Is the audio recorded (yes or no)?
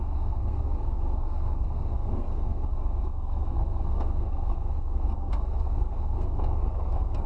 no